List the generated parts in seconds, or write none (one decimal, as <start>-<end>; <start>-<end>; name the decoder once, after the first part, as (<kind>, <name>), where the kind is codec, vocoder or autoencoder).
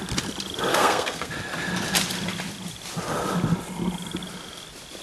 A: 0.7-1.3 (codec, SNAC)